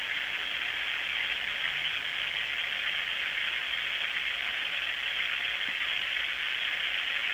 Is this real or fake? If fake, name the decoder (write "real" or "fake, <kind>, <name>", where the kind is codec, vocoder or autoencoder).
real